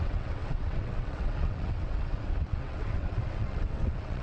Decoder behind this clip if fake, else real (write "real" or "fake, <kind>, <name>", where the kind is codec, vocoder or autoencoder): fake, vocoder, WaveNeXt